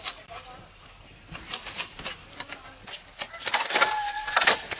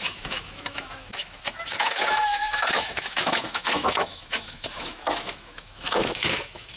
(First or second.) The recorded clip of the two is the first